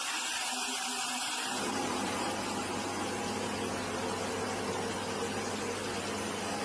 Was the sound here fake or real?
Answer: real